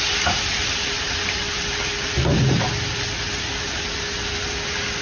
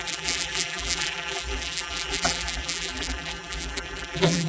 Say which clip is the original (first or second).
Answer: first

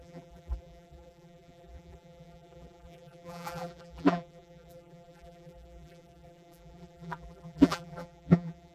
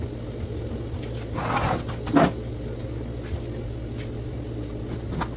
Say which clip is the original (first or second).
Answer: second